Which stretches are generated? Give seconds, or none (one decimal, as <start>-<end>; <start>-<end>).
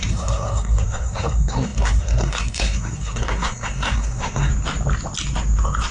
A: 0.0-4.5